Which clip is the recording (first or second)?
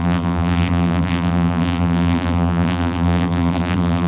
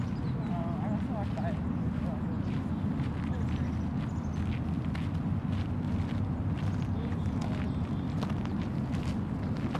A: second